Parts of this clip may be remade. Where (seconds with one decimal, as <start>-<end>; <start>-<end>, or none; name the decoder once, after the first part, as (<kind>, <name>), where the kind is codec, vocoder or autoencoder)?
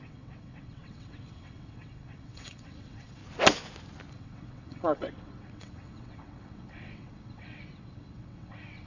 0.0-3.2 (vocoder, WaveNeXt); 4.1-8.9